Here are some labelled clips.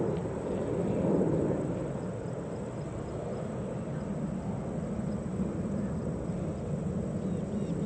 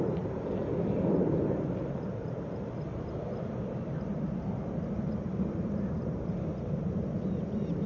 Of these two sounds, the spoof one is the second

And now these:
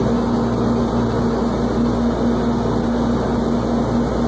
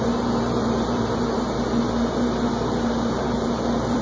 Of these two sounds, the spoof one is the second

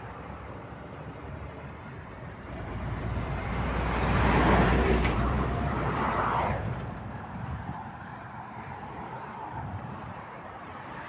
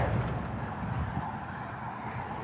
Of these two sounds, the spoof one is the first